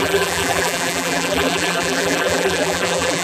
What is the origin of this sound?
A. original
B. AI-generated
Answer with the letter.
B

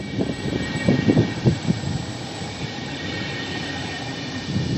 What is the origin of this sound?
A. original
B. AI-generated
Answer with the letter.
B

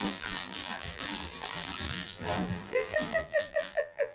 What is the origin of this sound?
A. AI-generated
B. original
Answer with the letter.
A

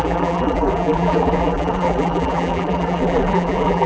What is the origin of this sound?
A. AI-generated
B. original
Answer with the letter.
A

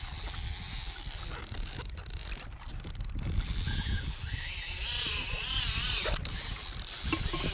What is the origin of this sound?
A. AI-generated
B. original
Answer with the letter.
B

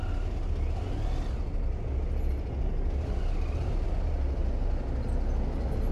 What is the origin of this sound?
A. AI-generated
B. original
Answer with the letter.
B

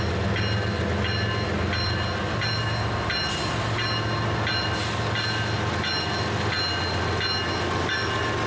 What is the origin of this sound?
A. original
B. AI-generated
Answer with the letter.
A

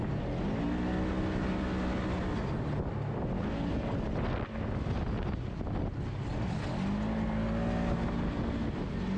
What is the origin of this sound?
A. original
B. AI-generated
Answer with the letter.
A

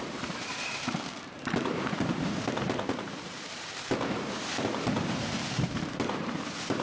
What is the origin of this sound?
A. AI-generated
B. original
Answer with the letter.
A